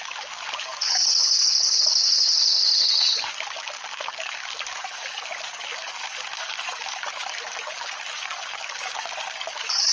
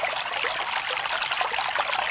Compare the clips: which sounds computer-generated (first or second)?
first